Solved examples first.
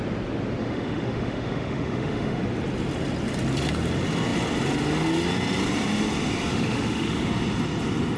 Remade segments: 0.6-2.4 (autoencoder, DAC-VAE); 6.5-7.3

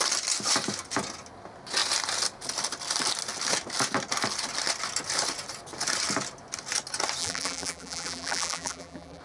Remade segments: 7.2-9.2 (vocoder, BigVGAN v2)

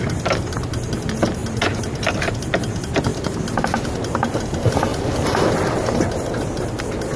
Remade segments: none